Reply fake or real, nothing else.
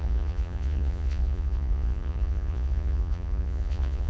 fake